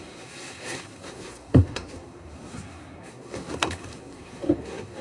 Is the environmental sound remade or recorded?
remade